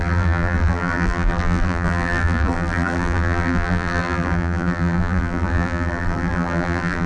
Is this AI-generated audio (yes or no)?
yes